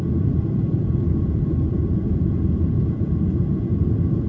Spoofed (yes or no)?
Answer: yes